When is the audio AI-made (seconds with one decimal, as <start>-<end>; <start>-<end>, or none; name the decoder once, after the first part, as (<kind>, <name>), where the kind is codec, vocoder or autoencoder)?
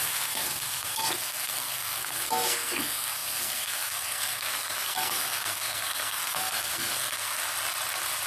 0.0-7.4 (codec, SNAC)